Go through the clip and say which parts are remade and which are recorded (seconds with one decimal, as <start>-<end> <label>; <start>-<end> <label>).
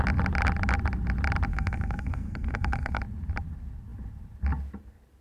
0.0-1.5 recorded; 1.5-3.0 remade; 3.0-5.2 recorded